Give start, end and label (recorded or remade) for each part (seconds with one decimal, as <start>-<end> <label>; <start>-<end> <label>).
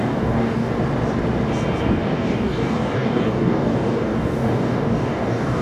0.0-0.7 remade; 0.7-1.8 recorded; 1.8-5.6 remade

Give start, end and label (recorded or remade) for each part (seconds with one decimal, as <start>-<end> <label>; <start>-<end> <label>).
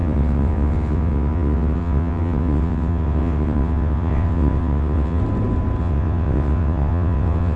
0.0-5.2 remade; 5.2-5.8 recorded; 5.8-7.6 remade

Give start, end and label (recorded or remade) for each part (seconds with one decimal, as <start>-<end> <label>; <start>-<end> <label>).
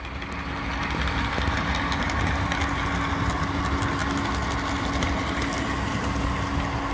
0.0-6.9 recorded